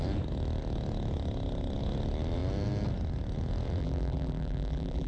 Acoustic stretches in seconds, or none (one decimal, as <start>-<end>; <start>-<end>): 0.0-3.8